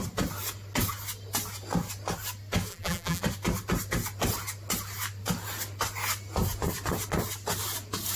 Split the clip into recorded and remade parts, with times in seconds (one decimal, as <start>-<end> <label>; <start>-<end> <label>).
0.0-2.7 recorded; 2.7-3.2 remade; 3.2-8.2 recorded